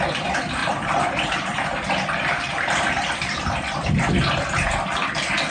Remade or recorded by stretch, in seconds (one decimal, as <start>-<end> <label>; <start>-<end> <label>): 0.0-0.6 recorded; 0.6-3.9 remade; 3.9-5.5 recorded